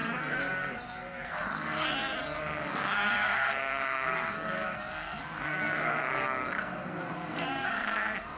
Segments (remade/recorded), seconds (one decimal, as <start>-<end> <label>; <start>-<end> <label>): 0.0-8.4 remade